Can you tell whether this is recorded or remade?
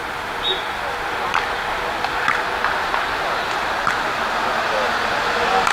recorded